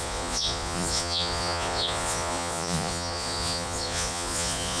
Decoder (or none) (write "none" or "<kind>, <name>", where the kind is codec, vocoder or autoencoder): vocoder, Vocos